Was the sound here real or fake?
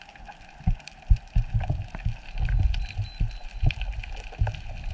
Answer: real